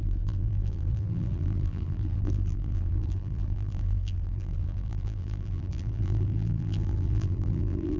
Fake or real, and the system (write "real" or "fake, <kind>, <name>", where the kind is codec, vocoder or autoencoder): fake, vocoder, BigVGAN v2